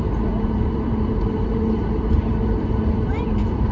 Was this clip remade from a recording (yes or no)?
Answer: yes